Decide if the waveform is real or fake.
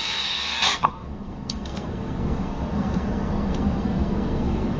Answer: fake